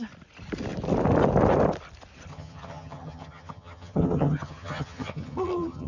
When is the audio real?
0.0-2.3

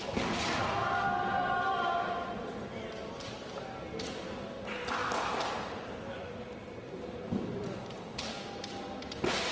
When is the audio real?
0.0-9.5

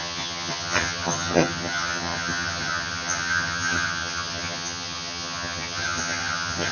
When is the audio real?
none

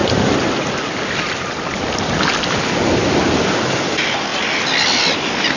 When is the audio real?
0.0-5.6

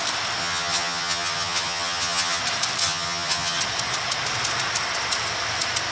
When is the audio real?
0.0-0.4; 2.4-2.8; 3.6-5.9

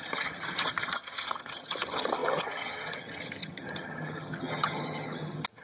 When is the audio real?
none

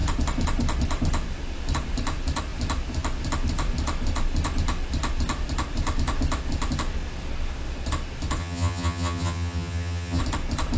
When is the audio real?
0.0-8.4; 10.2-10.8